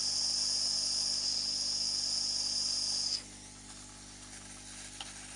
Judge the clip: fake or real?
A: real